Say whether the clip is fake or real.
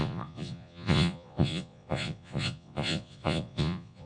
fake